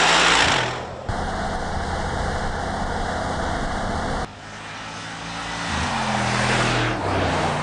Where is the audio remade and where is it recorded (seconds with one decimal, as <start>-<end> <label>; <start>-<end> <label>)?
0.0-7.6 recorded